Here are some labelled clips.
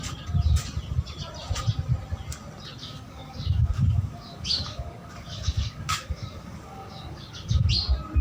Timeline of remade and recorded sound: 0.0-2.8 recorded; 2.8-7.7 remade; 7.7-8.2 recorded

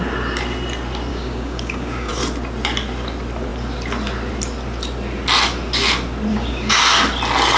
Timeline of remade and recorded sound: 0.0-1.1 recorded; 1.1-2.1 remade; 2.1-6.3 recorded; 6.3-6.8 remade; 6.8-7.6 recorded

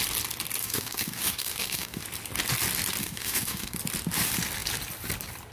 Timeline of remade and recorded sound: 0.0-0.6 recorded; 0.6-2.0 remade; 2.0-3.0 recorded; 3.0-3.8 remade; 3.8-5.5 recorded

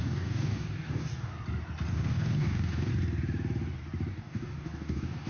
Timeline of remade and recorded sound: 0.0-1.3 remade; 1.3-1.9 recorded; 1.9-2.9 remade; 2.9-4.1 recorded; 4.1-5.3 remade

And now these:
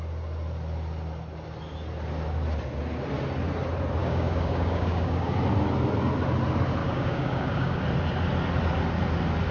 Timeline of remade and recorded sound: 0.0-4.0 recorded; 4.0-5.3 remade; 5.3-6.8 recorded; 6.8-7.8 remade; 7.8-9.5 recorded

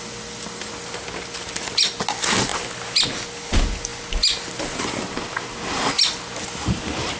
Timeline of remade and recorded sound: 0.0-7.2 recorded